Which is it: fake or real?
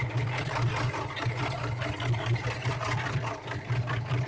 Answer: real